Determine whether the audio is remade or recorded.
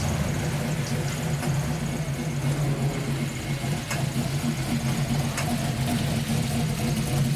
recorded